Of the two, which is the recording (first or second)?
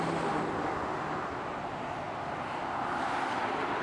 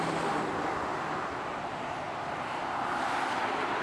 first